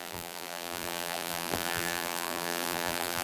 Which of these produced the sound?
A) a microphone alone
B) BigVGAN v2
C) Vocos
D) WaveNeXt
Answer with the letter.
B